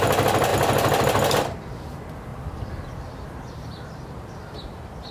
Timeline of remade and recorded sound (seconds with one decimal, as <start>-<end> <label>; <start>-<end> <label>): 0.0-2.3 recorded; 2.3-4.4 remade; 4.4-5.1 recorded